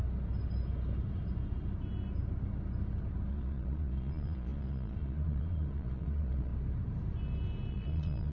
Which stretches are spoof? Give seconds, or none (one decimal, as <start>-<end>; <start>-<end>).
3.3-6.5; 7.7-8.3